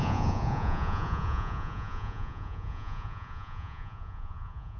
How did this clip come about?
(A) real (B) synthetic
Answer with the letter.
B